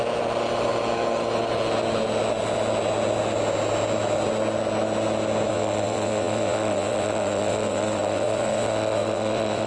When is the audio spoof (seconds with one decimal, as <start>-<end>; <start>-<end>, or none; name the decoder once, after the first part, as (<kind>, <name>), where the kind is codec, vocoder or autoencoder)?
5.5-9.7 (vocoder, WaveNeXt)